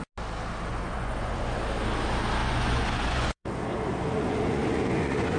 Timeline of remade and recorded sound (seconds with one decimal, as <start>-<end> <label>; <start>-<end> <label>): 0.0-0.7 recorded; 0.7-1.6 remade; 1.6-2.4 recorded; 2.4-5.4 remade